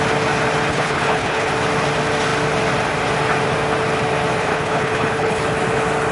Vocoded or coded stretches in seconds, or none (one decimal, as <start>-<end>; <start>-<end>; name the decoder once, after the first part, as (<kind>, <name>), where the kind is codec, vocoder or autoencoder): 0.7-1.5 (codec, HILCodec); 4.5-5.4